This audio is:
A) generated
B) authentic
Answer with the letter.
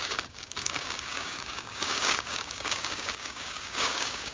A